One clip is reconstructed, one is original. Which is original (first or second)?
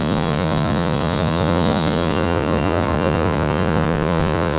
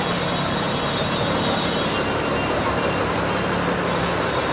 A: second